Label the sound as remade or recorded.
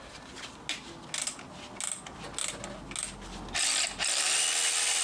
recorded